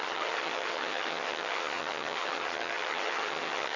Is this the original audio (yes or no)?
no